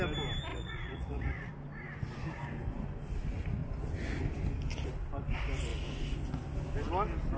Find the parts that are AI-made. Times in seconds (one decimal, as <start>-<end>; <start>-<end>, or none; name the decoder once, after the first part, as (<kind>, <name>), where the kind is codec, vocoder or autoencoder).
0.5-1.5 (vocoder, Vocos)